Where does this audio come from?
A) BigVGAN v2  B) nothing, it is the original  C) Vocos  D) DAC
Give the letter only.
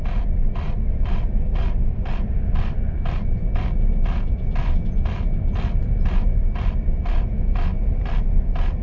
B